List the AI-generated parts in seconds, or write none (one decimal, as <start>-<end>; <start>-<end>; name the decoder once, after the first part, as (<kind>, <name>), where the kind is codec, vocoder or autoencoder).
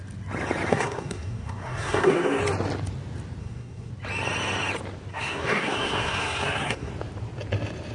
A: 0.7-2.4 (codec, SNAC); 3.4-3.9; 5.1-6.9